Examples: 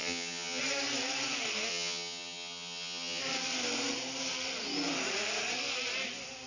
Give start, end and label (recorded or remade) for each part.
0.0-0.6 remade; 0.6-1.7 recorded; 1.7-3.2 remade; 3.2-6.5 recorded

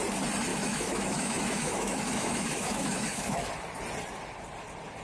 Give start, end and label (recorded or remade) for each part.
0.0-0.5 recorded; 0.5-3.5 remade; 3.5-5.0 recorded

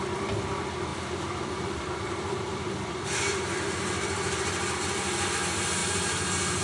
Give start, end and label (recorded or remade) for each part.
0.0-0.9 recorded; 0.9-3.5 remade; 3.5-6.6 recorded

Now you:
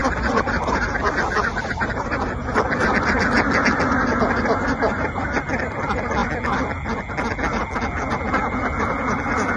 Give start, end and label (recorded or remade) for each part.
0.0-9.6 recorded